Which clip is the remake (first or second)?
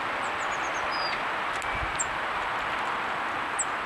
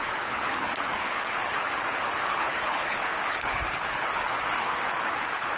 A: second